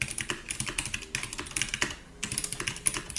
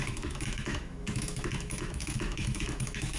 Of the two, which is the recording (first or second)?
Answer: first